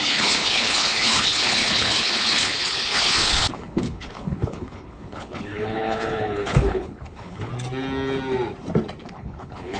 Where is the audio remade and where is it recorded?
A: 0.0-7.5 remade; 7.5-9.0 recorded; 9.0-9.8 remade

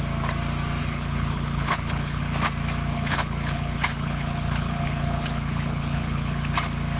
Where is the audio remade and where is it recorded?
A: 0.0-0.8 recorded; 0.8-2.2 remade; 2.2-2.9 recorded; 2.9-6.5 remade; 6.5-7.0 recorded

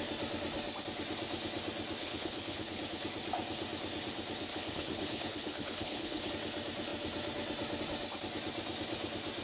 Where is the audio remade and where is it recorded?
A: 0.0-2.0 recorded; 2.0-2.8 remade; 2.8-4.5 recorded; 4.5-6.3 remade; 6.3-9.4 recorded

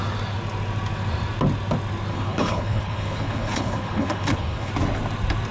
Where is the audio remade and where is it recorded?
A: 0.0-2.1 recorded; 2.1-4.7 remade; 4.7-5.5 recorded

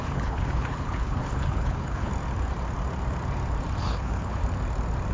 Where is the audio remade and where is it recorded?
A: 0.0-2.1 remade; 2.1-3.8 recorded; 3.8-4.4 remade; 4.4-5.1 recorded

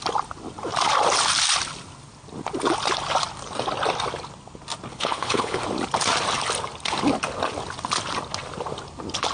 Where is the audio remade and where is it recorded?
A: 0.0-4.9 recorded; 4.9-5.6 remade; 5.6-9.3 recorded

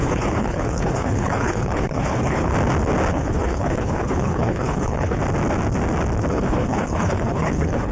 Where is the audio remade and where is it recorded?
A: 0.0-2.5 remade; 2.5-3.1 recorded; 3.1-5.2 remade; 5.2-6.3 recorded; 6.3-7.9 remade